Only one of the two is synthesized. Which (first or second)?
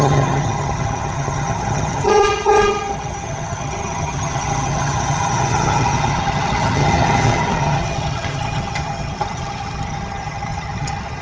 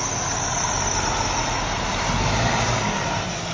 first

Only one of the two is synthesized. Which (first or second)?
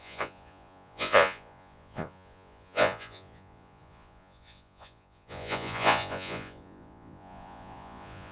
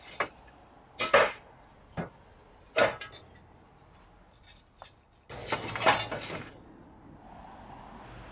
first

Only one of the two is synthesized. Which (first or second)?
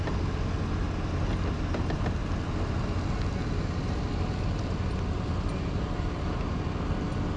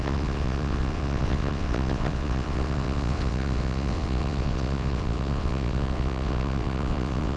second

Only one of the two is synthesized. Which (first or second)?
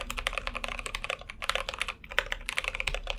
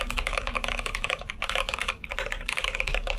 second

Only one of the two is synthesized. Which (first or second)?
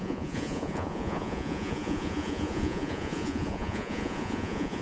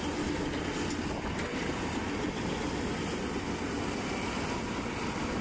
first